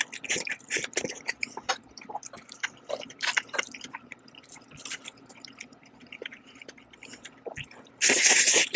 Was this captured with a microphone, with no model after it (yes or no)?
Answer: no